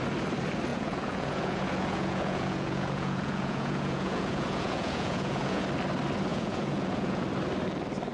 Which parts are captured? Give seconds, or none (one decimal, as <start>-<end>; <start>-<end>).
0.0-0.7; 5.6-6.3; 7.2-8.1